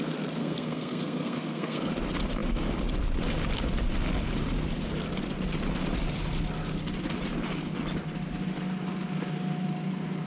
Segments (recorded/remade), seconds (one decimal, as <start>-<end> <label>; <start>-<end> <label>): 0.0-0.4 recorded; 0.4-1.9 remade; 1.9-10.3 recorded